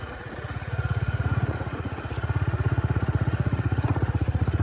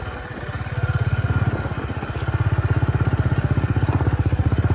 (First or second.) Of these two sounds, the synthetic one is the first